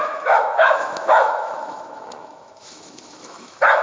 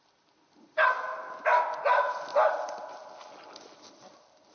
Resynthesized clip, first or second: first